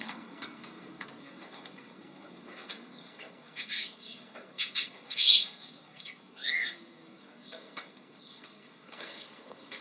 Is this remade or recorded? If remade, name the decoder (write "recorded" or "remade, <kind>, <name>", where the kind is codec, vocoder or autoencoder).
remade, codec, SNAC